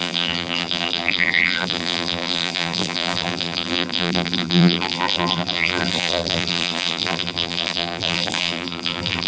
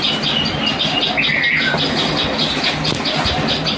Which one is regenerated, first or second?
first